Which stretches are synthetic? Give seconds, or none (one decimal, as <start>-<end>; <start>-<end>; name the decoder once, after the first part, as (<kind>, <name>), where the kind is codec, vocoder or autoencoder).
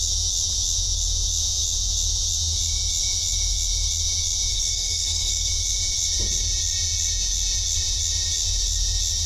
4.5-5.5 (codec, SNAC)